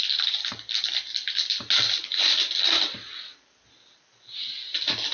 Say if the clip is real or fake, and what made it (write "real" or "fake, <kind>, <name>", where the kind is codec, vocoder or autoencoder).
real